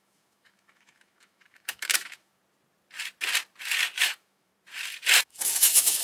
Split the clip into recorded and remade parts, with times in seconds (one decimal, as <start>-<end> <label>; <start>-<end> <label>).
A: 0.0-2.4 remade; 2.4-4.0 recorded; 4.0-4.5 remade; 4.5-5.2 recorded; 5.2-6.0 remade